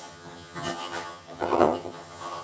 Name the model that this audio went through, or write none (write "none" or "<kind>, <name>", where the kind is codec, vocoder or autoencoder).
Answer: vocoder, HiFi-GAN